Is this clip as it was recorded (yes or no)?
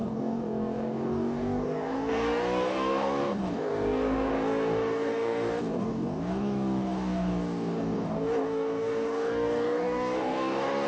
no